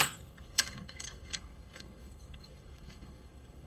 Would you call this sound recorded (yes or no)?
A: no